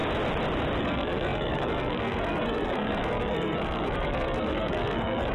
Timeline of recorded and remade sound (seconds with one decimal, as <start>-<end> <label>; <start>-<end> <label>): 0.0-0.8 recorded; 0.8-5.3 remade